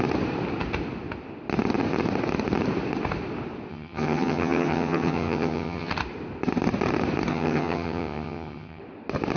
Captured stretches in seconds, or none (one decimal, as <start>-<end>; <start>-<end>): 0.0-3.7; 5.9-7.3; 8.8-9.4